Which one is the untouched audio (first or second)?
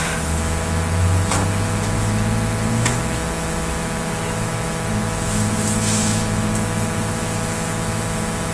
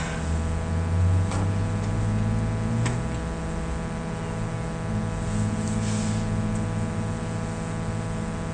second